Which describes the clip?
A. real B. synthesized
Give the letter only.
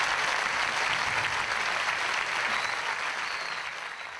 A